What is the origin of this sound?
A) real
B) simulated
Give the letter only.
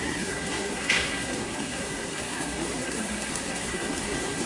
B